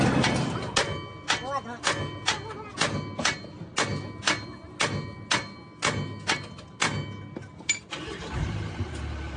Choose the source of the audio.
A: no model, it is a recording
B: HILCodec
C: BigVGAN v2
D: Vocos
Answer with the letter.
A